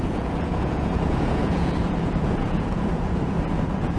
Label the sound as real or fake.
fake